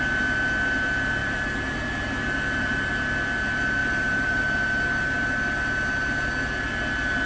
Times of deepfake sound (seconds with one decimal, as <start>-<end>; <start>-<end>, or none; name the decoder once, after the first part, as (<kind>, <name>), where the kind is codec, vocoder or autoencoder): 1.2-2.9 (vocoder, BigVGAN v2); 3.8-4.4